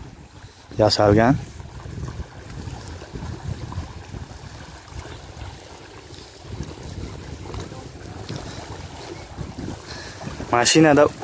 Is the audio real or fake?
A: real